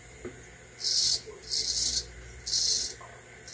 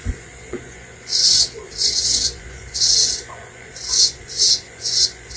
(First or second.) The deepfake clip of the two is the second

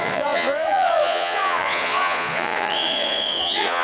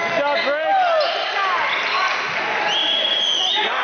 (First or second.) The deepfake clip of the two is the first